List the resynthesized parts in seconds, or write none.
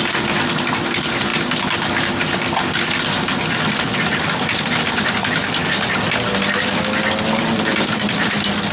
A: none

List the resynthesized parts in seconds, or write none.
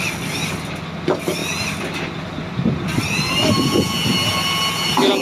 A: none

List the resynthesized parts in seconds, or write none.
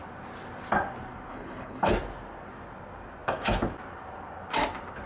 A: 1.3-1.9 (codec, HILCodec)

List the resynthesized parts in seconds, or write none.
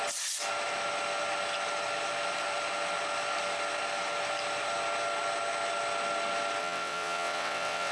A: 6.6-7.9 (vocoder, WaveNeXt)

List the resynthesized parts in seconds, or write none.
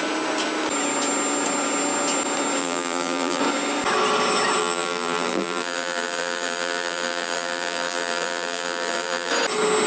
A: 2.6-3.4 (vocoder, BigVGAN v2); 4.6-9.3